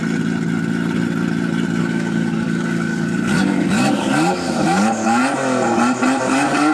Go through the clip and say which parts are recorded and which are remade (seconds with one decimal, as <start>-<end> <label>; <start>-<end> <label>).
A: 0.0-1.8 recorded; 1.8-5.2 remade; 5.2-6.2 recorded; 6.2-6.7 remade